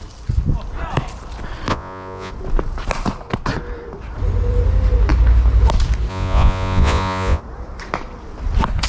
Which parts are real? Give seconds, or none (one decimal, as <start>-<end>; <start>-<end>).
0.0-1.7; 2.3-6.1; 7.4-8.9